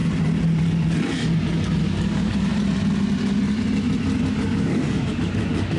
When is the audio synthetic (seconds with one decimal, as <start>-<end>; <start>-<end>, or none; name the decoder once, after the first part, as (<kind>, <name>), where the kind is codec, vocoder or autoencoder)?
1.8-2.5 (codec, DAC); 4.3-5.8